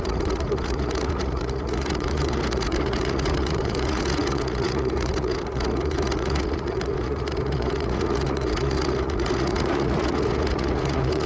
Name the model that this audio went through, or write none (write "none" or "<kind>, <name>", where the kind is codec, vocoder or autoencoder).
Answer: vocoder, Vocos